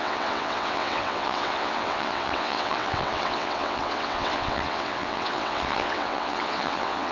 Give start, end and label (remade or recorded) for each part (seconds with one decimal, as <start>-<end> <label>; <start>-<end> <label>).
0.0-7.1 remade